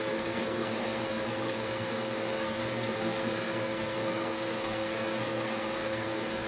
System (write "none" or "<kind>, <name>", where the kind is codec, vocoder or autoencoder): codec, SNAC